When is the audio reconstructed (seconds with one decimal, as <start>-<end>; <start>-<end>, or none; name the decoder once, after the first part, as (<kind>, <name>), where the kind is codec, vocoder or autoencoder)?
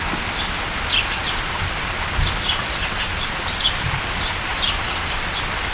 2.6-4.0 (vocoder, BigVGAN v2); 4.5-5.3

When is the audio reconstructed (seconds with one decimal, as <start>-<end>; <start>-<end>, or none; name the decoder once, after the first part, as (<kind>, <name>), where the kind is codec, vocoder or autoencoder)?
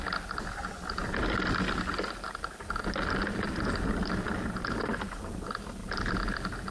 none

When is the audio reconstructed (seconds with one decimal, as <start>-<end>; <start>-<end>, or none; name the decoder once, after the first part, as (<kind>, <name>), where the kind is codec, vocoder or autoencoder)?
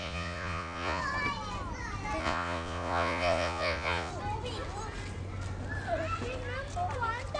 0.0-1.0 (vocoder, Vocos); 2.2-4.1